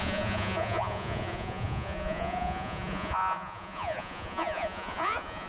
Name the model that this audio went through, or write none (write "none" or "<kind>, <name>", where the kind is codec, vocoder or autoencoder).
vocoder, Vocos